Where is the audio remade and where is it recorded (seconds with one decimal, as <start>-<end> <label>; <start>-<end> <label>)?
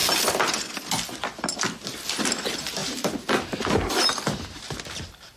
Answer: 0.0-5.4 recorded